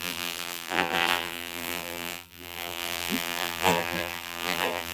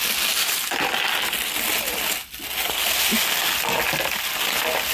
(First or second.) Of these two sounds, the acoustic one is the second